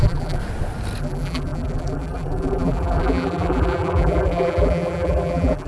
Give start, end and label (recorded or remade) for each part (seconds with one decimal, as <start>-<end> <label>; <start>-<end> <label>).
0.0-0.4 remade; 0.4-1.0 recorded; 1.0-5.7 remade